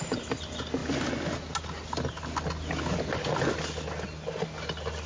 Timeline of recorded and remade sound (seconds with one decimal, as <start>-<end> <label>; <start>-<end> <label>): 0.0-5.1 recorded